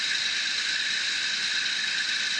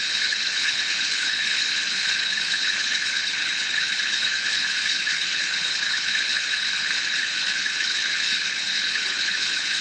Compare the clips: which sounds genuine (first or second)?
first